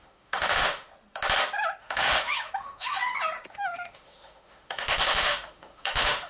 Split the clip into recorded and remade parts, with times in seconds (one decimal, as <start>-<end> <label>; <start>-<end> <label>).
0.0-0.9 remade; 0.9-1.8 recorded; 1.8-3.0 remade; 3.0-3.5 recorded; 3.5-6.3 remade